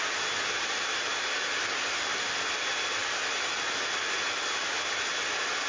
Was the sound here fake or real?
real